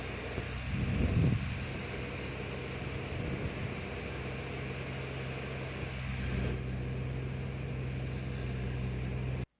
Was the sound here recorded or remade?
recorded